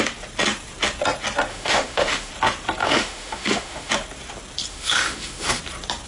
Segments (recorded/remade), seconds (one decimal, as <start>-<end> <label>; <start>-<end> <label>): 0.0-1.5 recorded; 1.5-2.3 remade; 2.3-2.8 recorded; 2.8-3.9 remade; 3.9-4.7 recorded; 4.7-5.6 remade; 5.6-6.1 recorded